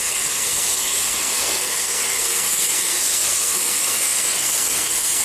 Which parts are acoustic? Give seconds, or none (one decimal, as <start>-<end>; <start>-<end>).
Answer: none

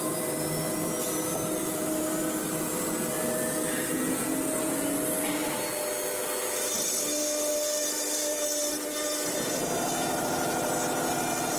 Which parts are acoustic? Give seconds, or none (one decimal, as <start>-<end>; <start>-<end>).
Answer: 0.0-1.6; 2.2-7.8; 8.7-11.6

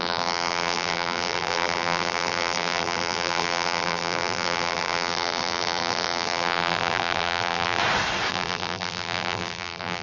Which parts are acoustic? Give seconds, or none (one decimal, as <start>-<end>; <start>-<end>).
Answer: 7.8-8.3

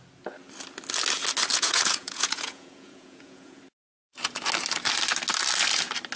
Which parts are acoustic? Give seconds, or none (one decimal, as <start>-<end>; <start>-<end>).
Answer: 0.0-1.5; 3.6-6.2

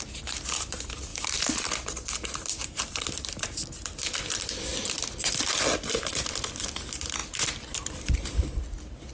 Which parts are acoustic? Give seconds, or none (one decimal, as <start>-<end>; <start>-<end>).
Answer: 4.7-6.0

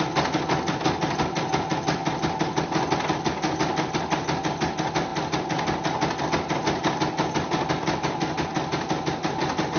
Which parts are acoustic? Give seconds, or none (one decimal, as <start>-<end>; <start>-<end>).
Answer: 0.0-9.8